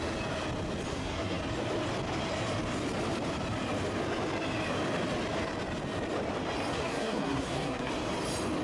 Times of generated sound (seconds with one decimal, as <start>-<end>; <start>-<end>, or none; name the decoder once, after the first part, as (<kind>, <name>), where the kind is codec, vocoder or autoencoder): 0.9-1.4 (codec, SNAC); 6.7-7.9